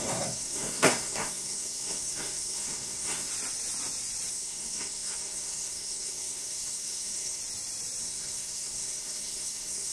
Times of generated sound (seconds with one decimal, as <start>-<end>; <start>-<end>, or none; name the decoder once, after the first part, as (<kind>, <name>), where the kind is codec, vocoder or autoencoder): 0.0-3.3 (codec, SNAC); 4.3-7.4; 8.0-9.9